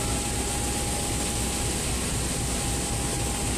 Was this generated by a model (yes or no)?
no